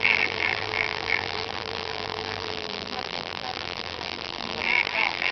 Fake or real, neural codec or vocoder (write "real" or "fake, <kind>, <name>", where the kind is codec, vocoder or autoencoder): fake, vocoder, BigVGAN v2